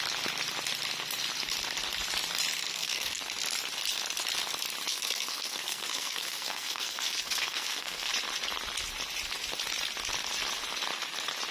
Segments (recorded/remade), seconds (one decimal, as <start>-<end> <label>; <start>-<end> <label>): 0.0-2.7 recorded; 2.7-3.2 remade; 3.2-4.9 recorded; 4.9-8.1 remade; 8.1-11.5 recorded